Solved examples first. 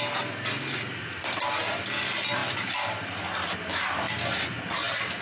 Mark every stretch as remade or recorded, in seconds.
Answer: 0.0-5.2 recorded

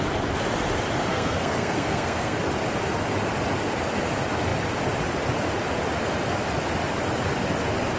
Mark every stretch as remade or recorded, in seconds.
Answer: 0.0-1.1 recorded; 1.1-2.4 remade; 2.4-8.0 recorded

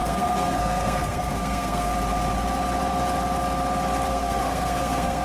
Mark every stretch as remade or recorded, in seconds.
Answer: 0.0-1.9 remade; 1.9-4.1 recorded; 4.1-5.2 remade

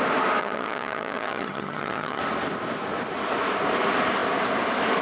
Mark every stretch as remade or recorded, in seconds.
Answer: 0.0-0.4 recorded; 0.4-2.2 remade; 2.2-5.0 recorded